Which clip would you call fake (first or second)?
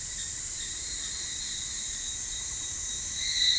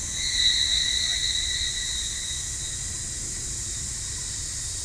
first